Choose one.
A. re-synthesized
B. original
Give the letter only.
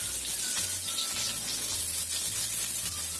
B